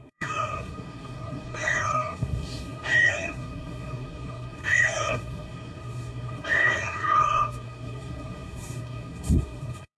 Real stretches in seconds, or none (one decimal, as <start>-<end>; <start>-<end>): none